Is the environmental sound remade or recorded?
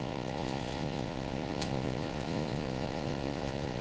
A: remade